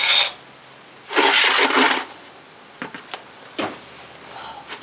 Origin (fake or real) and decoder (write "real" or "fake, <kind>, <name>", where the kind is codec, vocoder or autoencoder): real